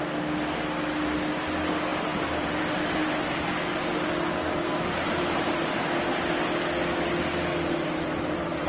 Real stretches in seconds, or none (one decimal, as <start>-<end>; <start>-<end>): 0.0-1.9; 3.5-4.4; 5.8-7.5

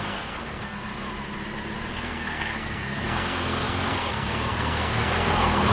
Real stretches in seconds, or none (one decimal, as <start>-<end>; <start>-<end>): 0.9-1.9

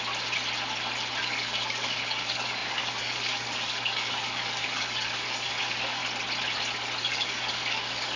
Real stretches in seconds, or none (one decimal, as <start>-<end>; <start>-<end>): 0.0-1.2; 6.0-7.0

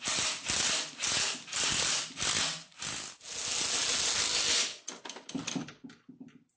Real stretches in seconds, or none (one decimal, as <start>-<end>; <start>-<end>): 0.0-6.6

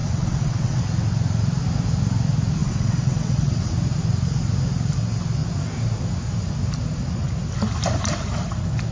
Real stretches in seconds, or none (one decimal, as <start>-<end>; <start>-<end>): 0.8-2.6; 3.7-8.9

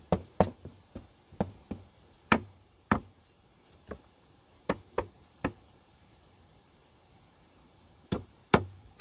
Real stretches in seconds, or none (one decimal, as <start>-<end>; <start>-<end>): 0.7-1.8

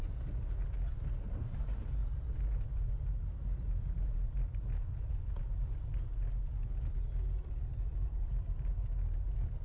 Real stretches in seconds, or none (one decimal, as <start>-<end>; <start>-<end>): 0.0-9.6